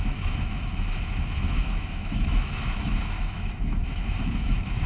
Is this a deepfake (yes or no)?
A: yes